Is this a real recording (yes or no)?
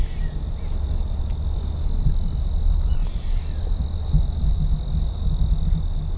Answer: yes